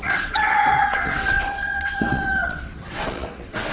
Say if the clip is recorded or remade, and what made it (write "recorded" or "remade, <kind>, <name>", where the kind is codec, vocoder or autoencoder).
remade, vocoder, WaveNeXt